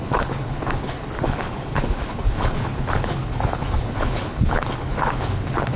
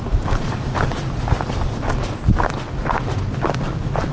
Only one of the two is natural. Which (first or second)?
second